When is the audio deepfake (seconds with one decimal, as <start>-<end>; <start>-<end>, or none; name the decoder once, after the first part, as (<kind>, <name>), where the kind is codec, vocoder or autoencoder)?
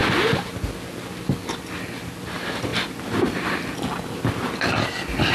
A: none